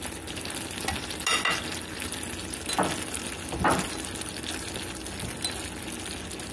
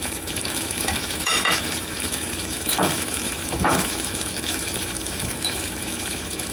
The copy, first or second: second